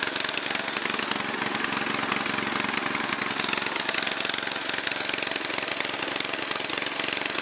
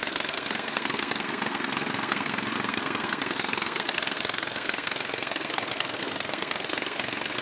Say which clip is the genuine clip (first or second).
first